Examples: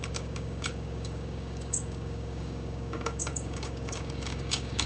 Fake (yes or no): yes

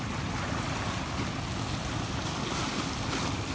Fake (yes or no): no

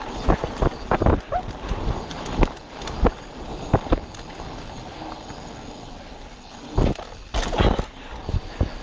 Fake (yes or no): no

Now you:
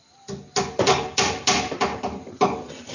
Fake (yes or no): no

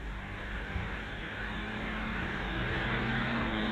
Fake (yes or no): yes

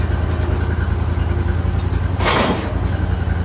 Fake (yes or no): no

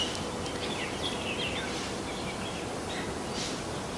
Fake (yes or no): no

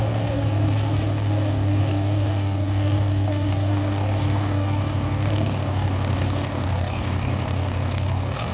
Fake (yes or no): yes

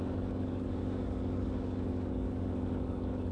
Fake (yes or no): yes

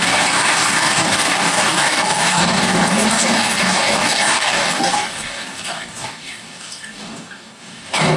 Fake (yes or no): yes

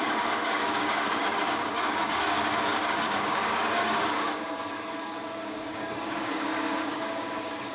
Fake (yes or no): yes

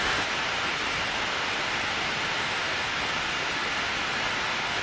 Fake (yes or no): no